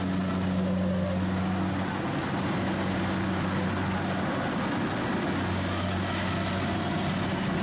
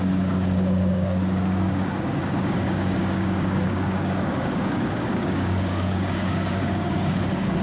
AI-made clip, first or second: second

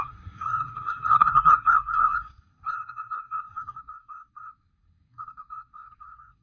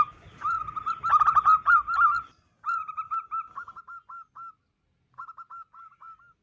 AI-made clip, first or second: first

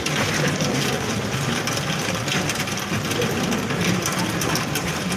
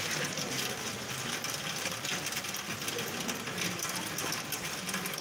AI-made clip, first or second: first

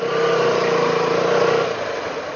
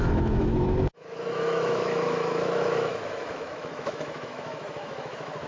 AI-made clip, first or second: second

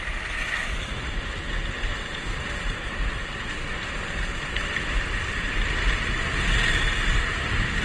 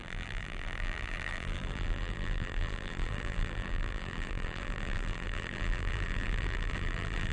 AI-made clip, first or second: second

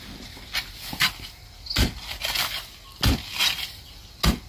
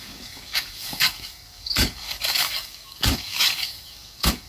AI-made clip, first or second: second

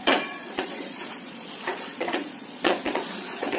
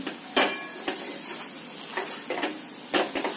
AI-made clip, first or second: first